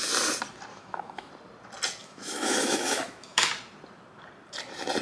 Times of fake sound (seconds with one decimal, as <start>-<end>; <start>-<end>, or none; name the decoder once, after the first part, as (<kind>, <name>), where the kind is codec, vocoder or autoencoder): 0.7-1.3 (autoencoder, DAC-VAE); 2.0-3.5